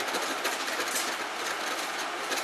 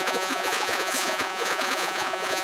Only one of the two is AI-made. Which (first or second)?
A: second